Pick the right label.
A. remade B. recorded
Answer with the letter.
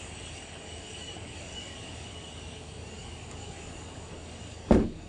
A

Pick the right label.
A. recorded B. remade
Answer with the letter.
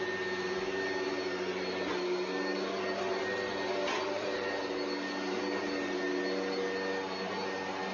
A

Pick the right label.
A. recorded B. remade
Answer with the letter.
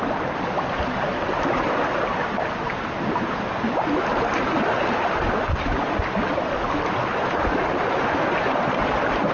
A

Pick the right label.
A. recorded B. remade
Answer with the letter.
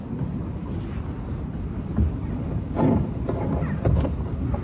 A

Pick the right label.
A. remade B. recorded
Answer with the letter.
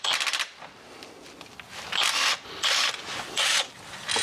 B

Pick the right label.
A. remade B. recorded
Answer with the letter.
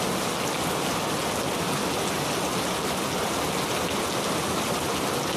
B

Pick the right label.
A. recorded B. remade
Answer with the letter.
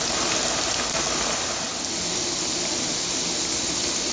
A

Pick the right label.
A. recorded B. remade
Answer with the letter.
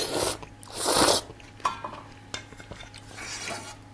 A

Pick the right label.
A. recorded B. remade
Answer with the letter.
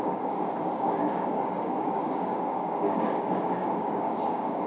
B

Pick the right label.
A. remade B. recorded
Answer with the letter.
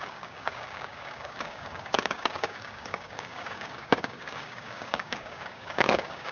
A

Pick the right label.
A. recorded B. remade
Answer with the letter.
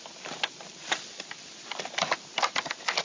A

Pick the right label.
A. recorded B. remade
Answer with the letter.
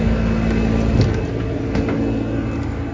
A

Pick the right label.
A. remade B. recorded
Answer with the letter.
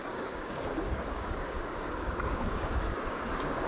A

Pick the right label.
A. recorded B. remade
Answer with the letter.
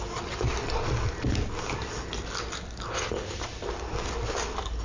A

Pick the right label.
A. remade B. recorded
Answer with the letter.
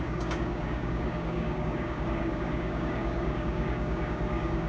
A